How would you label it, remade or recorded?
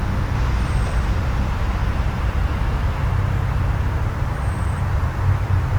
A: remade